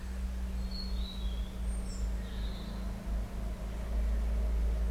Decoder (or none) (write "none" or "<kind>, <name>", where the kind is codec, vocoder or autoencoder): none